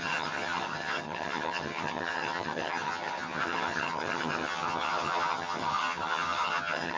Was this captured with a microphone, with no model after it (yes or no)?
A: no